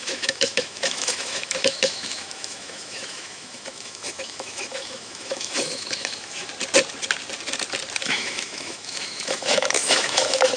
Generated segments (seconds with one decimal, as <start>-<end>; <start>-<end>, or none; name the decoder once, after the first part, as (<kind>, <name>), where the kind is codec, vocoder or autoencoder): 0.0-6.5 (autoencoder, DAC-VAE); 8.0-10.6